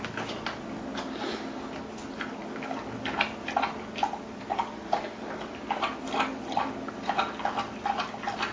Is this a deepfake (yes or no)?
no